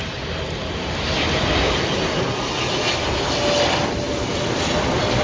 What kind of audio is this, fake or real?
real